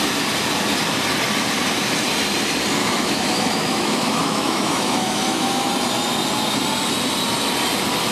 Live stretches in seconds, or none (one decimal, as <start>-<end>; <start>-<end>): 0.0-2.8; 5.7-8.1